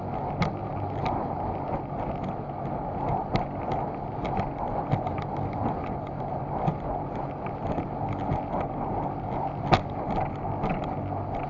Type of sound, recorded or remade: recorded